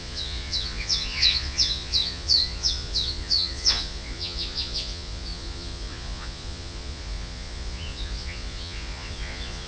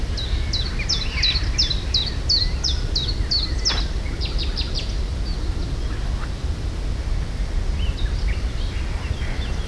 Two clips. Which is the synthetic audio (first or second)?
first